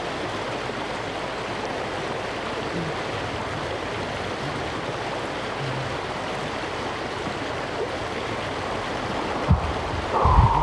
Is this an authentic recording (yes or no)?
yes